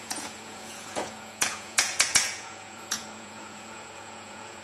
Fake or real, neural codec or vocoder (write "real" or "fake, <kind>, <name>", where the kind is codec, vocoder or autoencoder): fake, vocoder, Vocos